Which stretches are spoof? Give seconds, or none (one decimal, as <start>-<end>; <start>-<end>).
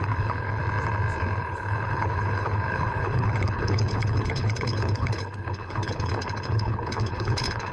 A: 0.0-0.6; 1.4-7.7